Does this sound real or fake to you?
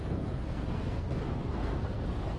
fake